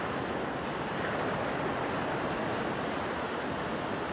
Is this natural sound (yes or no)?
yes